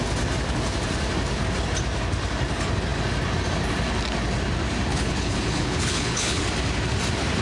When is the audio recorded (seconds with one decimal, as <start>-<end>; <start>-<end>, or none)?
0.0-4.9; 6.4-7.4